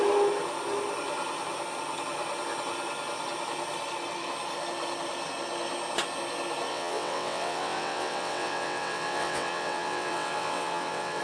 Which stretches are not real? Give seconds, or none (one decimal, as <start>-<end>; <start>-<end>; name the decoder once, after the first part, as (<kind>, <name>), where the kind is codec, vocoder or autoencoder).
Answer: 6.7-11.2 (vocoder, WaveNeXt)